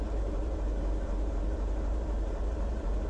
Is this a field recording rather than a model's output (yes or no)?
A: no